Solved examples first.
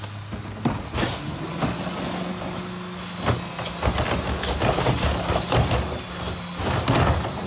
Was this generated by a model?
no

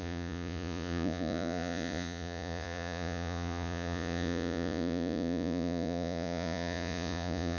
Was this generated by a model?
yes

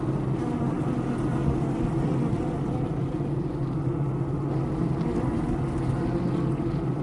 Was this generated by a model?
no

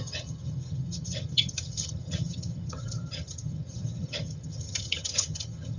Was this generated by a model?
yes